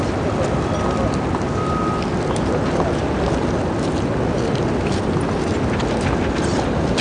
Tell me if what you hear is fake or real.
real